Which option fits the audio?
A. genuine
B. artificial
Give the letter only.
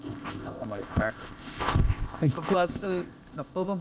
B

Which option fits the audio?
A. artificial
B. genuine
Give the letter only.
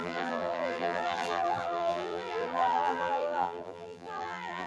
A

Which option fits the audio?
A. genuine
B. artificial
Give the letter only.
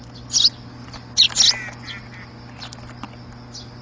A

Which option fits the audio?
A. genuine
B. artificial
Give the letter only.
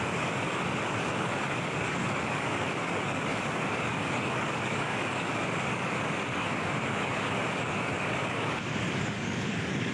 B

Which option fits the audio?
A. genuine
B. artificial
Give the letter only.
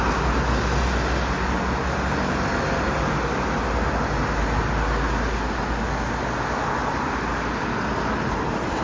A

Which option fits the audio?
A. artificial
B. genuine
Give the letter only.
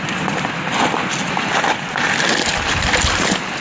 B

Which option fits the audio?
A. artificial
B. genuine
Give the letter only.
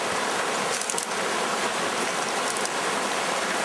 B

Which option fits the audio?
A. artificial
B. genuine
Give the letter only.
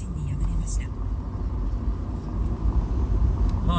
B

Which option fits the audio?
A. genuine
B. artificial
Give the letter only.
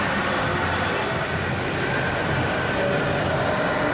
A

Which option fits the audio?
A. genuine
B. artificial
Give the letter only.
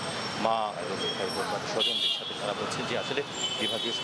A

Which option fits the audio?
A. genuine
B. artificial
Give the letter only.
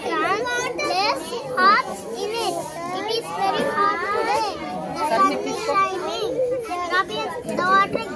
A